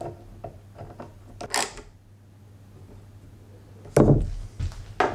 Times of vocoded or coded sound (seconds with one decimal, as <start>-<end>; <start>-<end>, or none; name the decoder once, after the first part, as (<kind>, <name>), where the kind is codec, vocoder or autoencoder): none